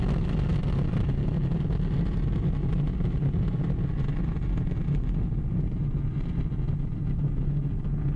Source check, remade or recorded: recorded